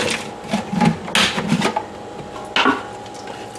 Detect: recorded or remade recorded